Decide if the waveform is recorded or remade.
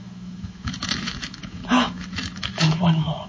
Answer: remade